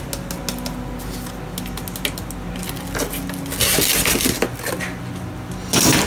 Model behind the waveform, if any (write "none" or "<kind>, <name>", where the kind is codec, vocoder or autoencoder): none